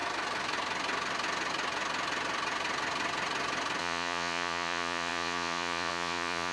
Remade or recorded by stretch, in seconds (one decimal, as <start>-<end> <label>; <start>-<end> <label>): 0.0-3.8 recorded; 3.8-6.5 remade